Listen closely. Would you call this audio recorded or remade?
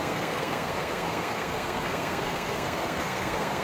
remade